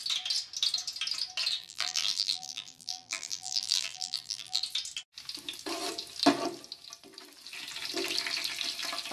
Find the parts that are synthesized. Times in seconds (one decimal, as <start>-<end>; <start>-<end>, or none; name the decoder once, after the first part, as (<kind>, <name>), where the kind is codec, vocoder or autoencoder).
1.6-4.6 (vocoder, BigVGAN v2)